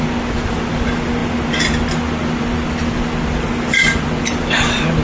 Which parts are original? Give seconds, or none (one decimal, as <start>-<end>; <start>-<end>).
0.0-5.0

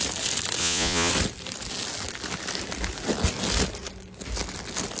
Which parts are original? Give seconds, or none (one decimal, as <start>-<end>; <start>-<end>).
0.0-0.6; 1.1-5.0